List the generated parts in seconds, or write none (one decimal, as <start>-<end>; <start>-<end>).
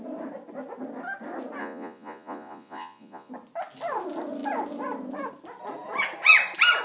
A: 1.6-3.3